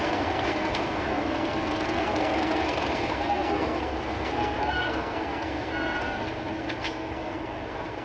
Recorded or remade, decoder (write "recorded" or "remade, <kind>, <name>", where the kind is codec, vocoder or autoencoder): remade, codec, SNAC